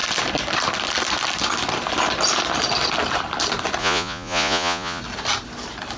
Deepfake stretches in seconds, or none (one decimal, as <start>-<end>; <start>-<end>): 3.8-5.0